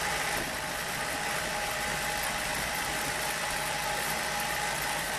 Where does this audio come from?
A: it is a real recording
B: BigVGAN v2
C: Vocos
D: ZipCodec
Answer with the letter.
B